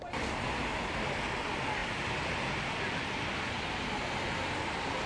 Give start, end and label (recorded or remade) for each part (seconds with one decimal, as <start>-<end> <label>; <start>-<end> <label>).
0.0-5.1 recorded